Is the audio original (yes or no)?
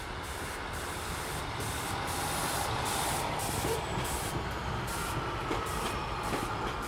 no